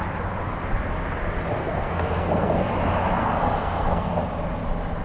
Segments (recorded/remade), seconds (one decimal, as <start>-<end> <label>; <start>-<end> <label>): 0.0-1.6 recorded; 1.6-2.7 remade; 2.7-3.2 recorded; 3.2-4.2 remade; 4.2-5.0 recorded